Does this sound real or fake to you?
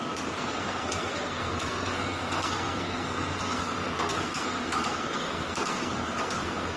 fake